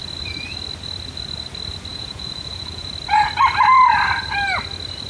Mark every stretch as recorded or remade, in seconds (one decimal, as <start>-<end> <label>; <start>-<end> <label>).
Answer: 0.0-1.9 recorded; 1.9-2.9 remade; 2.9-5.1 recorded